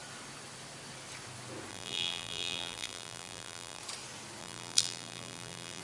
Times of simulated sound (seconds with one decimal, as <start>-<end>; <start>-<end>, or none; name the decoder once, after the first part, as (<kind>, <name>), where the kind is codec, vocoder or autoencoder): 1.7-3.8 (vocoder, BigVGAN v2); 4.4-5.8